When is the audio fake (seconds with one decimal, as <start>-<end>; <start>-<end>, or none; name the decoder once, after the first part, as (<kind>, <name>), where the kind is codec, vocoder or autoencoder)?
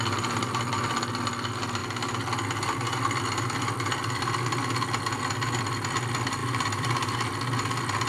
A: 6.4-7.3 (vocoder, BigVGAN v2)